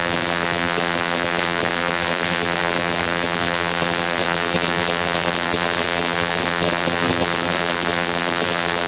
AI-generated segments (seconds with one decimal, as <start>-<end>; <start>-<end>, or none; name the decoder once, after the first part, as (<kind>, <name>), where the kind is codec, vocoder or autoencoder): 0.0-8.9 (vocoder, BigVGAN v2)